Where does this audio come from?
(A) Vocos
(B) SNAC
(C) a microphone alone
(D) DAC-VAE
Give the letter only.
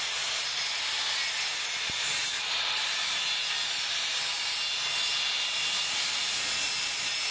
C